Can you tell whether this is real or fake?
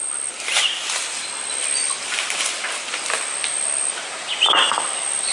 real